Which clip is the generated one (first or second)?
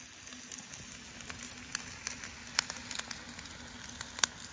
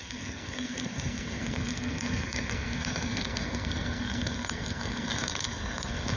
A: second